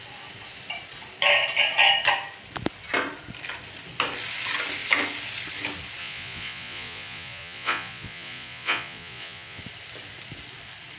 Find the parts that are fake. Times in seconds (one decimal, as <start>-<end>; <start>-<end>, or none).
6.0-9.6